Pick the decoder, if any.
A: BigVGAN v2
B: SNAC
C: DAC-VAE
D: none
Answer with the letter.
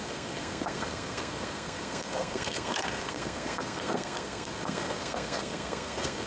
B